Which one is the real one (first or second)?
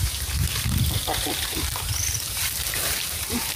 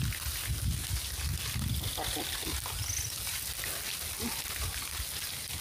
second